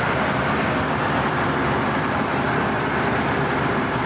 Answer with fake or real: fake